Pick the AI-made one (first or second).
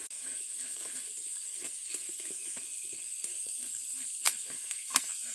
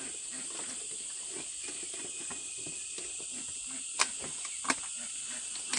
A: first